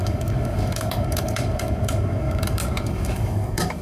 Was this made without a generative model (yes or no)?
no